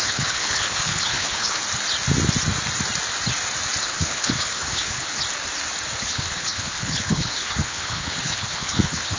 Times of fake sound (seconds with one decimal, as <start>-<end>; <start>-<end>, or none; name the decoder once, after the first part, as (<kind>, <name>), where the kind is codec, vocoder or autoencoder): 0.0-1.6 (codec, HILCodec); 3.8-5.2; 6.0-9.2

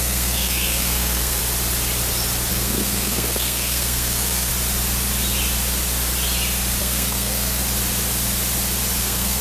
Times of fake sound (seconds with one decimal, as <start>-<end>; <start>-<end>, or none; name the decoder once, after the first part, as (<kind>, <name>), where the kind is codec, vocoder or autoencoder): 0.0-1.4 (codec, SNAC); 2.5-4.5; 6.8-7.6; 9.0-9.4